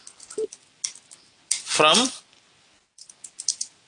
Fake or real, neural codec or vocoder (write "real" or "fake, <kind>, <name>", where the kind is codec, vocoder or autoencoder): real